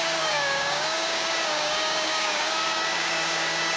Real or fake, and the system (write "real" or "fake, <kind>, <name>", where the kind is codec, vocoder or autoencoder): fake, codec, DAC